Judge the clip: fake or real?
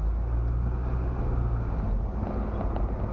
real